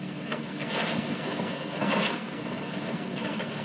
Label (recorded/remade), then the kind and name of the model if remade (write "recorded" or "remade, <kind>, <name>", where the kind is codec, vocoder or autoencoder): remade, codec, SNAC